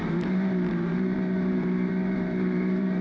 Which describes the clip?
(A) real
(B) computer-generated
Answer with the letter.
B